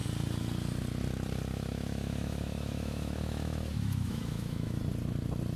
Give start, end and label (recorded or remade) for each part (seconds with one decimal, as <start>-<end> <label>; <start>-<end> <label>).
0.0-1.5 recorded; 1.5-4.8 remade; 4.8-5.6 recorded